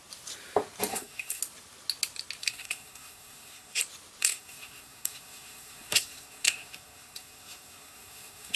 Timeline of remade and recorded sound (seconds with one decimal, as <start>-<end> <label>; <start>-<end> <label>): 0.0-0.9 recorded; 0.9-1.4 remade; 1.4-2.4 recorded; 2.4-3.8 remade; 3.8-4.2 recorded; 4.2-8.6 remade